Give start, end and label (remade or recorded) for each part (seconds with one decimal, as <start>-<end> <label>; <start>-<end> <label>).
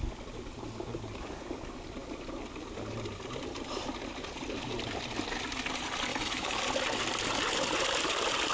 0.0-6.1 recorded; 6.1-6.6 remade; 6.6-8.5 recorded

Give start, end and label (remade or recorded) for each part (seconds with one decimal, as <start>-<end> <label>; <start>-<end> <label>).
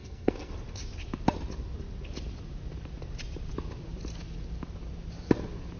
0.0-0.5 remade; 0.5-5.8 recorded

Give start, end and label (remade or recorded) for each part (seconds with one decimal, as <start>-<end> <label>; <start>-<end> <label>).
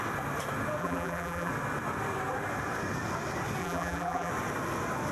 0.0-0.8 recorded; 0.8-1.5 remade; 1.5-3.6 recorded; 3.6-4.3 remade; 4.3-5.1 recorded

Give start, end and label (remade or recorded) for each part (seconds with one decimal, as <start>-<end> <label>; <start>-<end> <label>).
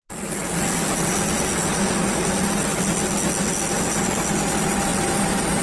0.0-5.6 recorded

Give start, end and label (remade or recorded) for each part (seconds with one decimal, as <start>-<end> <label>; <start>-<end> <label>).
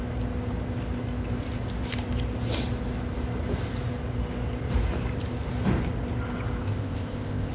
0.0-6.6 recorded; 6.6-7.5 remade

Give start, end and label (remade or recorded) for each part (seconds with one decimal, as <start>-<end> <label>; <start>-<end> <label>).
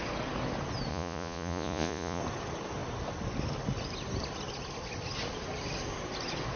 0.0-0.9 recorded; 0.9-2.2 remade; 2.2-6.6 recorded